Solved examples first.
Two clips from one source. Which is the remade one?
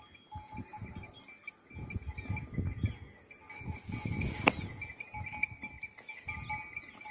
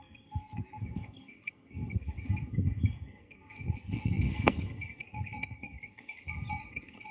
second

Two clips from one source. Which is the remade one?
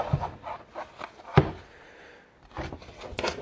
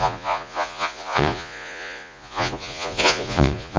second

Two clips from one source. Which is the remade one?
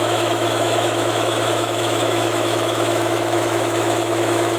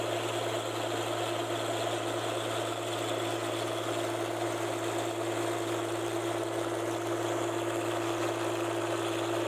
first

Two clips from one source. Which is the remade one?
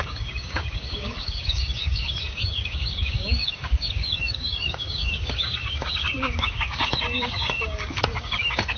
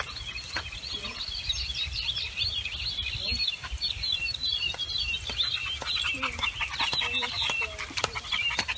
first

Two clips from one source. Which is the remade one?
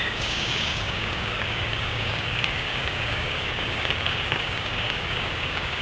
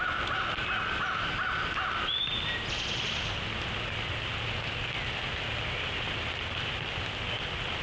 first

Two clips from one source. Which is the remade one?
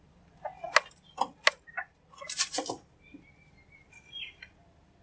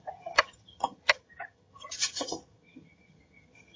second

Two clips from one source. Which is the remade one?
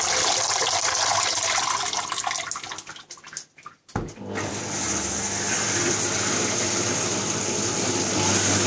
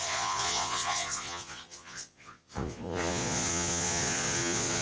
second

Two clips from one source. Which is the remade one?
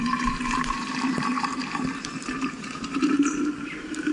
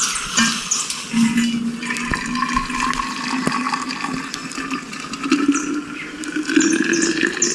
first